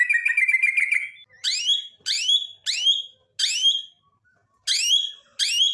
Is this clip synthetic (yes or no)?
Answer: no